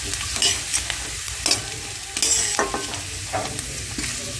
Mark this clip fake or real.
real